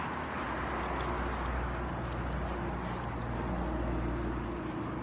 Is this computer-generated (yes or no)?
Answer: no